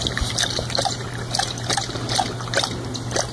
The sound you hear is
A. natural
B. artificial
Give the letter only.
A